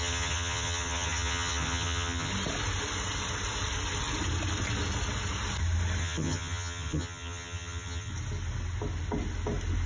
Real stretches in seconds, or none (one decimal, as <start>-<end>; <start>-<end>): 2.3-6.0; 8.1-9.9